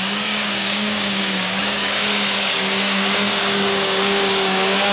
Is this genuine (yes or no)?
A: no